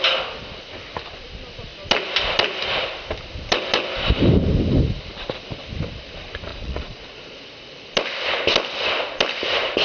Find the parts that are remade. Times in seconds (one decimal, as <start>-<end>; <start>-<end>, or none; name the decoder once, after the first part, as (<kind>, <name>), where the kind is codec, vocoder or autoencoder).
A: 6.5-7.0 (vocoder, Vocos)